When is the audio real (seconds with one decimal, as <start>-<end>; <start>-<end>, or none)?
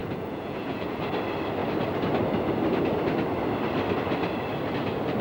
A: 1.0-5.2